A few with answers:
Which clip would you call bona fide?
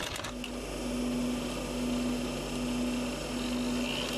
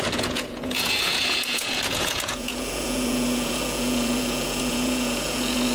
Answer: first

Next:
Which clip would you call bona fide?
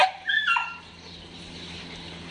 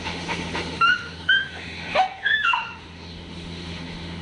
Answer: first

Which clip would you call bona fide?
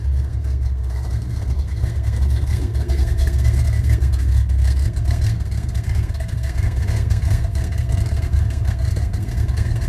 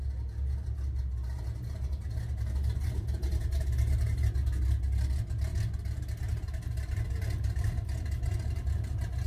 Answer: second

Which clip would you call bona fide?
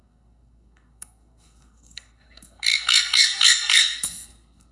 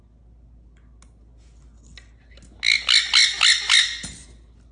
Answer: second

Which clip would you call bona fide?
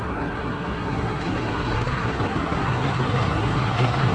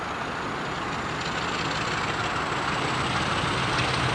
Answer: second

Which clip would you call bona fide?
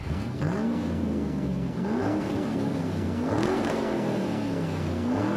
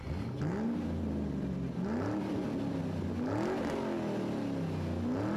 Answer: second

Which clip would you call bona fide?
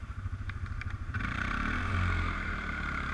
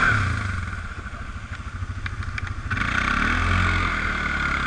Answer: second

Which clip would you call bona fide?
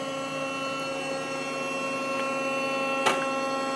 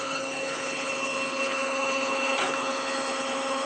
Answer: first